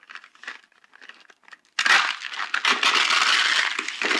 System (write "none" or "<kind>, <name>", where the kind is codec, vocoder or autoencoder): none